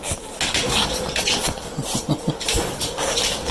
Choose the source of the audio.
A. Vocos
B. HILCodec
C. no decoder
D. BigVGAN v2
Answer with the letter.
C